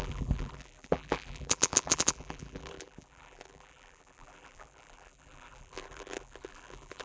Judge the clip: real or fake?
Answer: fake